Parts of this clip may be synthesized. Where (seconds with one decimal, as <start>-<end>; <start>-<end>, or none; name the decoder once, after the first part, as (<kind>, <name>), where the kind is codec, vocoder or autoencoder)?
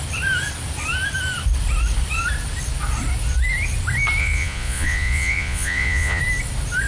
4.2-6.2 (vocoder, Vocos)